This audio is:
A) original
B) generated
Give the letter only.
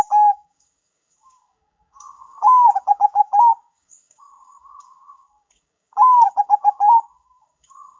B